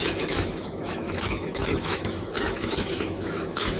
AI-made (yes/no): yes